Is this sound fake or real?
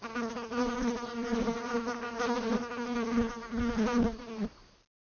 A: real